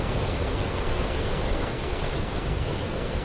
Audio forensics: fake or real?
fake